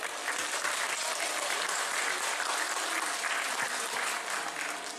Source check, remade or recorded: recorded